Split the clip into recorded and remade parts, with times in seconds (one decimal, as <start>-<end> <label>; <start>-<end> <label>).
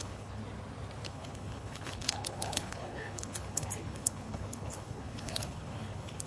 0.0-0.4 remade; 0.4-1.1 recorded; 1.1-6.3 remade